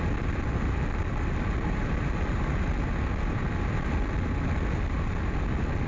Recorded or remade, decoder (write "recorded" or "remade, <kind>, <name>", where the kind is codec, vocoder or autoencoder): recorded